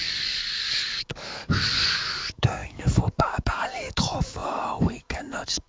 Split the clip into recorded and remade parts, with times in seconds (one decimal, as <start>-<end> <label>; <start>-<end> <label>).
0.0-5.7 remade